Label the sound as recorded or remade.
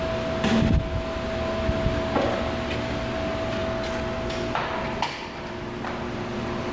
recorded